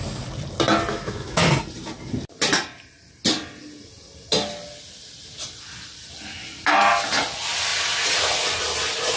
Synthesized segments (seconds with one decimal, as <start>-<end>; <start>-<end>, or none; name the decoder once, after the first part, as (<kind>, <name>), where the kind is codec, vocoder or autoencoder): 0.9-1.5 (autoencoder, DAC-VAE)